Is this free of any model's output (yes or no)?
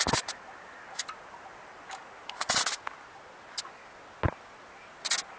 yes